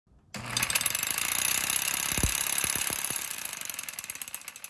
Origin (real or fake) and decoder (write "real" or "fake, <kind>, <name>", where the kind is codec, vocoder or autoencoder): real